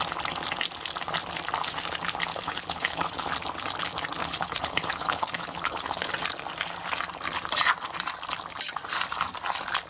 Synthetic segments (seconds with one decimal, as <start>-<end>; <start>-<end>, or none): 2.3-3.3; 4.2-6.1